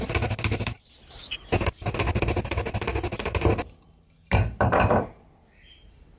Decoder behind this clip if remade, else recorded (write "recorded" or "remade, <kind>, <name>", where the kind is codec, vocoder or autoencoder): recorded